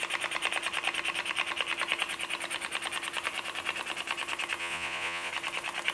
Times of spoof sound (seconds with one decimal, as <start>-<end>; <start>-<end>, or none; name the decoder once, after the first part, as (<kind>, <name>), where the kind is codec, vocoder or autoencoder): 4.6-5.3 (vocoder, Vocos)